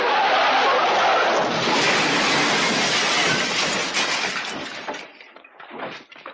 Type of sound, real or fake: real